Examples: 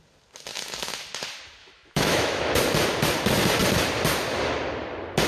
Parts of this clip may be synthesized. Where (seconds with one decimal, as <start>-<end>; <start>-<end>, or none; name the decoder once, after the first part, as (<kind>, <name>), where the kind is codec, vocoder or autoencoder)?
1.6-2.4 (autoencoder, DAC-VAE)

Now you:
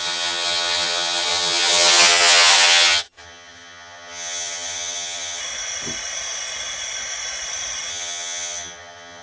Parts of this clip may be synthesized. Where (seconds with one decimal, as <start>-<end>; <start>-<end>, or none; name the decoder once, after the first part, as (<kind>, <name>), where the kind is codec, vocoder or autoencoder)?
0.0-5.4 (vocoder, HiFi-GAN); 7.9-9.2

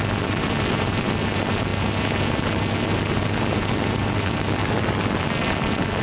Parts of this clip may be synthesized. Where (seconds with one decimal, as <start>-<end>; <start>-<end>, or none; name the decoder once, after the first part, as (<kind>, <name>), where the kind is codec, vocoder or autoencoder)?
none